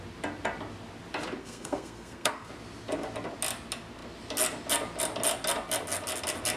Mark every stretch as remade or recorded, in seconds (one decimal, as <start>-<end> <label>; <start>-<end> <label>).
0.0-1.4 recorded; 1.4-2.5 remade; 2.5-6.6 recorded